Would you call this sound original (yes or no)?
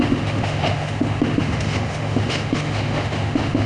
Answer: no